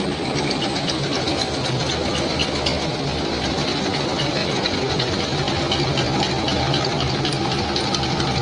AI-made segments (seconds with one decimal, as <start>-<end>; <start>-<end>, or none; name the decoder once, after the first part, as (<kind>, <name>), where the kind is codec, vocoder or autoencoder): 4.4-5.1 (vocoder, Vocos)

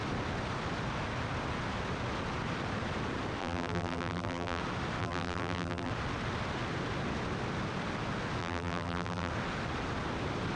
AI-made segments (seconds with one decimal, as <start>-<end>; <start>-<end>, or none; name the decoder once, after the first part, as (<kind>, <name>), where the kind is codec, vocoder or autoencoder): 3.4-4.6 (vocoder, BigVGAN v2); 5.0-5.9; 8.4-9.3